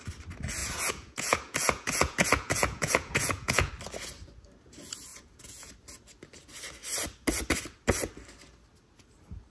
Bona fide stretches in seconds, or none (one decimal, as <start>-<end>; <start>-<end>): 0.0-0.6; 3.7-5.1; 5.7-9.5